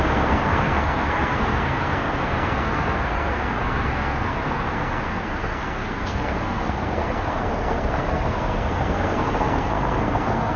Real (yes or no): no